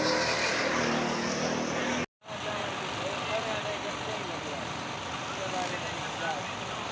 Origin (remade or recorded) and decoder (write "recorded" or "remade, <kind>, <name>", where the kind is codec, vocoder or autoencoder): recorded